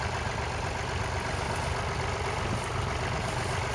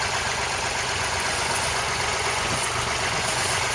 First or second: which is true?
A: first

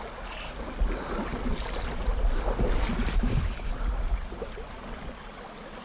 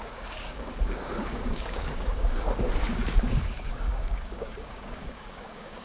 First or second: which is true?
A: first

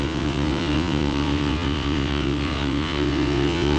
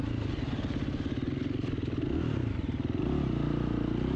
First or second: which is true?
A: second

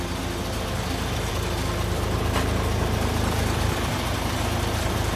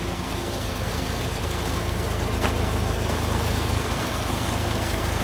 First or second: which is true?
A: first